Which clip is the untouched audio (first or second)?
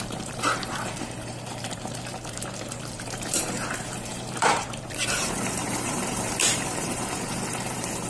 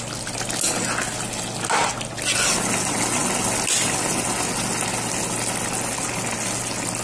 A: second